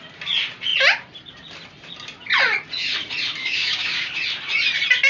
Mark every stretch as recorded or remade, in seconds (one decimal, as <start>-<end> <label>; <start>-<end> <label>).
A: 0.0-3.4 recorded; 3.4-4.1 remade; 4.1-5.1 recorded